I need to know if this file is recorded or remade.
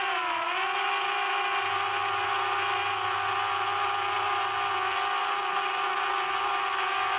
recorded